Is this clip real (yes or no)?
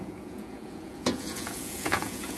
no